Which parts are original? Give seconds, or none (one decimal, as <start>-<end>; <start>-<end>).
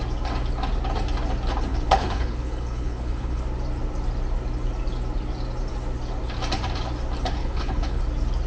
0.0-1.7; 3.4-7.4; 8.0-8.5